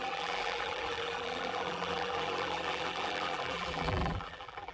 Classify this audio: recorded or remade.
remade